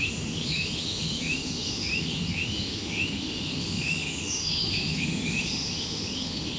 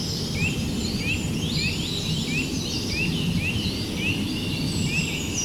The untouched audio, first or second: second